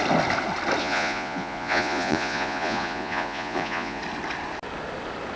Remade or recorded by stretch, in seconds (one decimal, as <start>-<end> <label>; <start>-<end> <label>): 0.0-0.8 recorded; 0.8-4.0 remade; 4.0-5.4 recorded